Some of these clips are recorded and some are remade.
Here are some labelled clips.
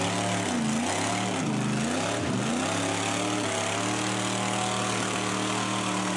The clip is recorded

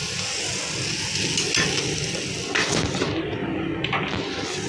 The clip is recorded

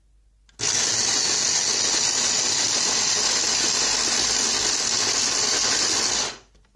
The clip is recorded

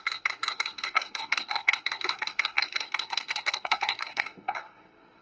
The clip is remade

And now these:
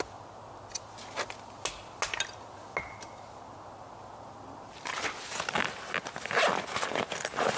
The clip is recorded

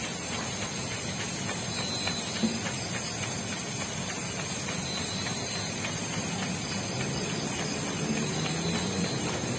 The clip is recorded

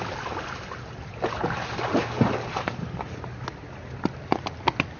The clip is recorded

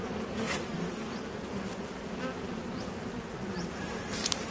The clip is remade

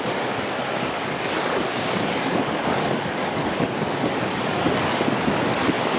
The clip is remade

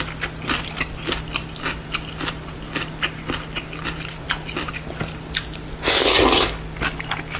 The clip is recorded